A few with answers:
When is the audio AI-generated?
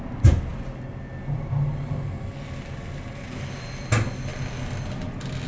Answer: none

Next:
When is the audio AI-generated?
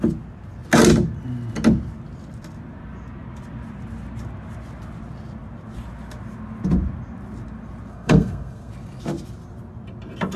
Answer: 7.9-8.7 (codec, SNAC)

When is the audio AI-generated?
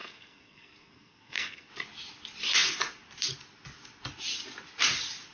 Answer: 0.0-1.7 (codec, SNAC)